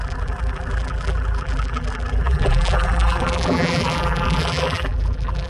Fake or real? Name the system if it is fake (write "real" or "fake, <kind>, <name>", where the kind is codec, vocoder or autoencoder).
fake, vocoder, BigVGAN v2